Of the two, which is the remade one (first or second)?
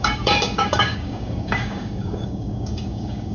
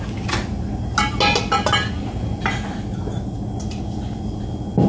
first